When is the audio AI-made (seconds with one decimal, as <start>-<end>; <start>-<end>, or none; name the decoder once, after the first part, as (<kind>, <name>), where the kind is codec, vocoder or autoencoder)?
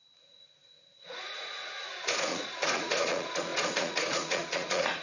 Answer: 0.0-5.0 (vocoder, Vocos)